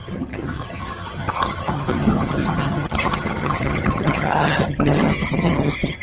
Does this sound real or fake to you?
fake